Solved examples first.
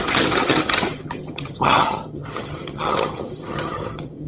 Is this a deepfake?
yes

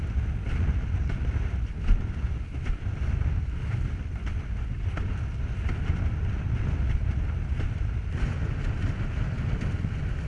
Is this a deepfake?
no